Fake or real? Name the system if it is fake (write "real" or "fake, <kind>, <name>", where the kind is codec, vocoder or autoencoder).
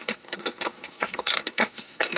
fake, codec, SNAC